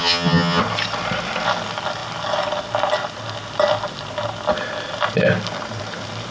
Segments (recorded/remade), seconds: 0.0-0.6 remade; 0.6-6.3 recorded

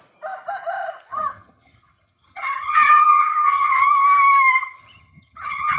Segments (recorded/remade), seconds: 0.0-1.1 recorded; 1.1-3.9 remade; 3.9-4.6 recorded; 4.6-5.8 remade